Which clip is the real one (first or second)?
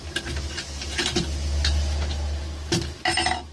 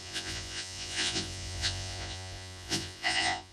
first